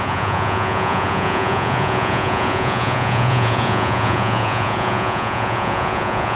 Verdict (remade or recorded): remade